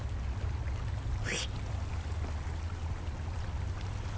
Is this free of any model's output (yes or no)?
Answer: yes